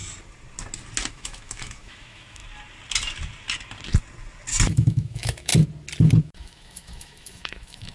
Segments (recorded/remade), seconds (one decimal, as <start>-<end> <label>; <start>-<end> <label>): 0.0-1.1 recorded; 1.1-2.4 remade; 2.4-4.7 recorded; 4.7-5.5 remade; 5.5-6.2 recorded; 6.2-7.9 remade